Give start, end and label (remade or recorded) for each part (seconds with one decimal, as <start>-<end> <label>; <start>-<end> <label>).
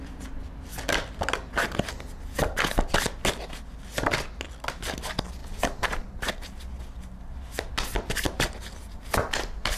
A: 0.0-5.4 recorded; 5.4-6.5 remade; 6.5-9.8 recorded